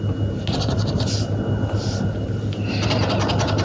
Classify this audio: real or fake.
real